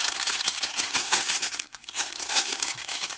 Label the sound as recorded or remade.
remade